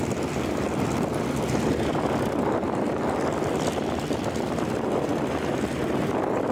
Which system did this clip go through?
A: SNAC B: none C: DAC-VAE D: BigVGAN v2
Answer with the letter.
B